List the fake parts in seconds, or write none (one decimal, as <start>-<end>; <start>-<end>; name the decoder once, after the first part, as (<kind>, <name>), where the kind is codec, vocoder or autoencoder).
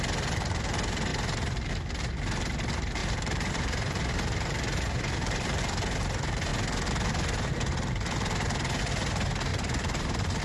3.0-5.6 (vocoder, BigVGAN v2); 9.5-10.4